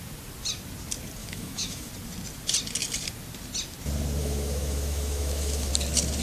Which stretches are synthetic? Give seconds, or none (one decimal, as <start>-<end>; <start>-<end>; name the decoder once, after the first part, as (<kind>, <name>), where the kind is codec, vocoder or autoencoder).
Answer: 1.2-1.9 (autoencoder, DAC-VAE); 4.2-5.7